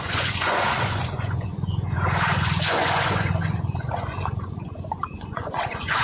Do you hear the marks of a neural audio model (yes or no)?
yes